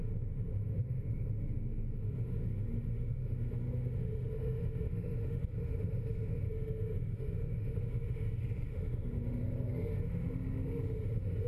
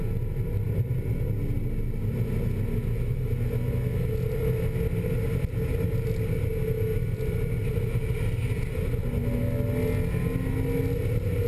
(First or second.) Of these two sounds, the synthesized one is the first